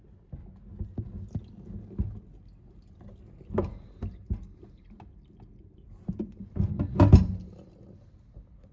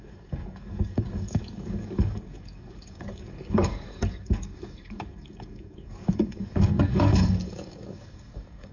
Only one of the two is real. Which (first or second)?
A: first